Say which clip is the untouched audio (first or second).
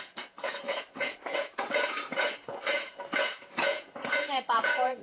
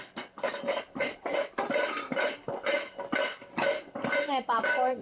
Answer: second